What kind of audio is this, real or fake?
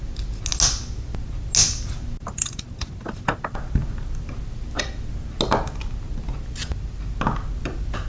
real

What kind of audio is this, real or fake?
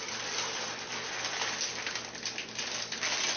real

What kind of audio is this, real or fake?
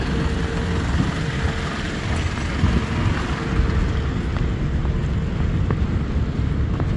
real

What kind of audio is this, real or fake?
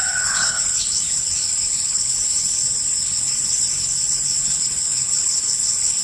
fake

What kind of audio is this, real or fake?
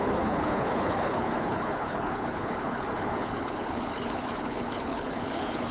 fake